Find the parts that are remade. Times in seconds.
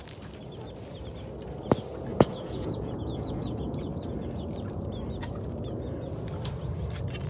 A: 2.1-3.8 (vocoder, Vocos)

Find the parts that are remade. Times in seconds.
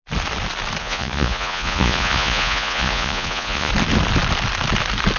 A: 0.8-3.7 (vocoder, Vocos)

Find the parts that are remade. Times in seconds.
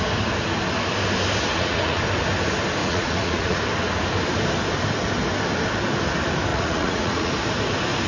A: 1.5-2.0 (vocoder, Vocos); 2.8-3.6; 6.5-7.3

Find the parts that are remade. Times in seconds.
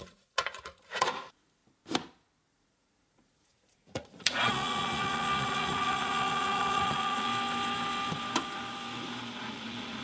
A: 0.0-1.6 (vocoder, Vocos); 2.5-7.3; 9.4-10.0